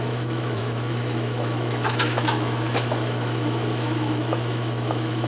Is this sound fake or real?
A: fake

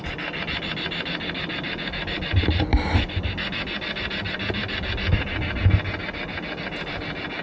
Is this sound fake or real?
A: real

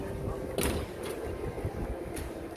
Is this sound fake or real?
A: real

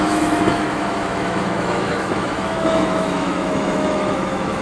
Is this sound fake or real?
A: fake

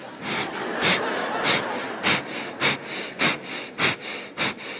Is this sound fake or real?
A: real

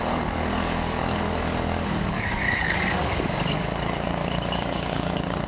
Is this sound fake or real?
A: fake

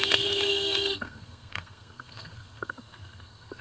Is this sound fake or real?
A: fake